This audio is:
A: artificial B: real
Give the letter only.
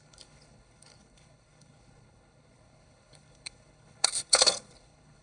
A